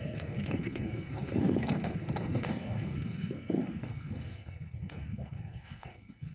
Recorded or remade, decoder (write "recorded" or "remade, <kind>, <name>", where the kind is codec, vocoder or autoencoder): remade, codec, SNAC